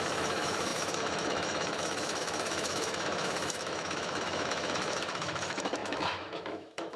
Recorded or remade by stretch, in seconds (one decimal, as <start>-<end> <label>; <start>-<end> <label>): 0.0-7.0 remade